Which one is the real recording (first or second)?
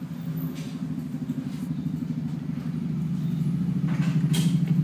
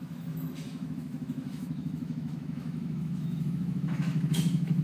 first